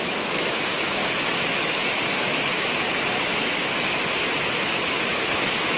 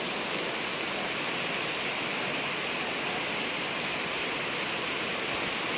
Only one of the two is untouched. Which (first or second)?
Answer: second